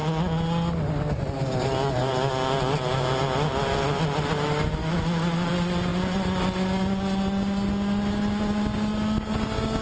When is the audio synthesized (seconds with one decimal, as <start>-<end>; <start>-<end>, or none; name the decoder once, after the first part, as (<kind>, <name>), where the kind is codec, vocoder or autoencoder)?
4.8-5.5 (autoencoder, DAC-VAE)